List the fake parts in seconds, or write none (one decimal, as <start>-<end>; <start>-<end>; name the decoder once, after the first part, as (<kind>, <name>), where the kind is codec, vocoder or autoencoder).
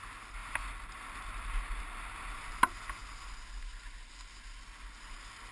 none